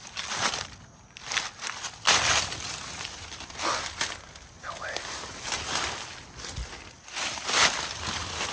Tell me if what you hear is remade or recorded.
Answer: recorded